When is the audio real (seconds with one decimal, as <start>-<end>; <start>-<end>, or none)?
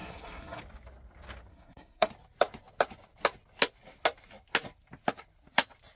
0.6-1.5; 2.1-6.0